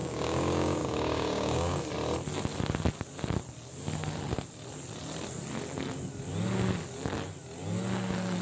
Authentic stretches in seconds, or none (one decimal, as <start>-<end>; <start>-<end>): 1.8-8.4